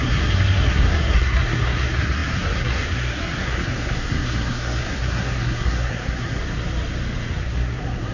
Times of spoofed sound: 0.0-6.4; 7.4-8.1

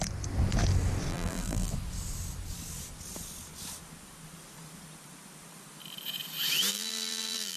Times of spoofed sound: 1.1-1.7; 6.7-7.6

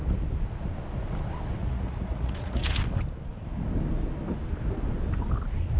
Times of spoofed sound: 1.6-2.8

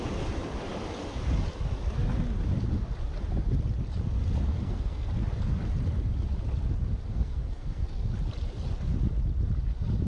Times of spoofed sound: 4.5-5.1; 7.1-8.1